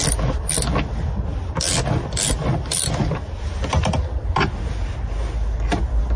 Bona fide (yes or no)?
yes